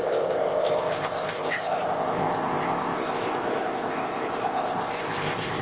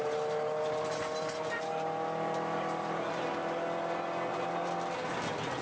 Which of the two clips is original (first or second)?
second